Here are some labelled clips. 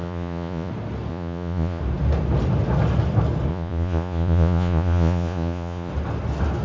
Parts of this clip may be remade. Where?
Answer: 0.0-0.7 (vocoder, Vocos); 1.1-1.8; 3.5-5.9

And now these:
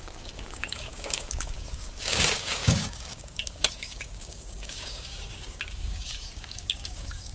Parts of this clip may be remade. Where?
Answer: 0.0-7.3 (codec, DAC)

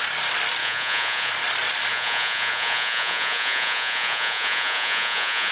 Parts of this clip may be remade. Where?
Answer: 0.6-1.3 (vocoder, Vocos); 1.9-5.5

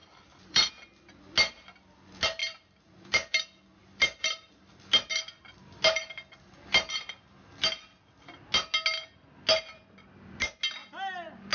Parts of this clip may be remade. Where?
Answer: 0.0-0.7 (vocoder, BigVGAN v2); 2.4-3.4; 3.8-4.7; 10.8-11.5

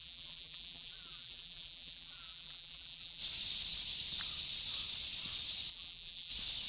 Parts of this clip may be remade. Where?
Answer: 0.0-3.2 (vocoder, BigVGAN v2); 5.7-6.3

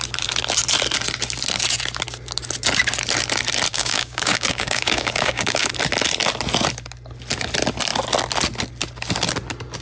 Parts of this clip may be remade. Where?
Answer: 3.7-5.7 (codec, DAC)